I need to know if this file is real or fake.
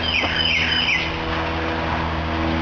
real